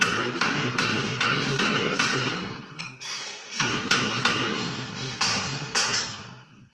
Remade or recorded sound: remade